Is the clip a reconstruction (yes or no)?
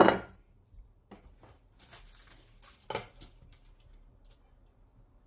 no